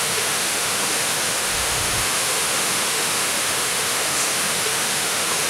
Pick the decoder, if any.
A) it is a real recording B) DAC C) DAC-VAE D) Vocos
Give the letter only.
C